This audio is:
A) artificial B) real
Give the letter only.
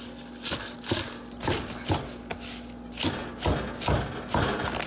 B